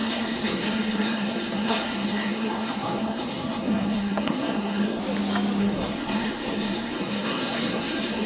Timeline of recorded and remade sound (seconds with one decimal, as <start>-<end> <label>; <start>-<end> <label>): 0.0-5.0 remade; 5.0-5.6 recorded; 5.6-8.3 remade